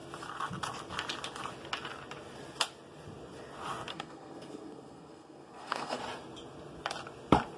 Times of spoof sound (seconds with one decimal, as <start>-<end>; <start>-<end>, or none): 3.9-6.0